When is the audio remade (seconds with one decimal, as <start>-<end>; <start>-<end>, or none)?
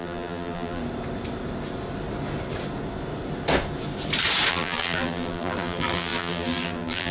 0.0-0.8; 4.5-7.1